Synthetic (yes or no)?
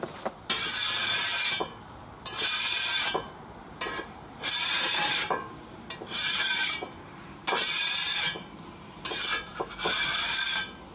yes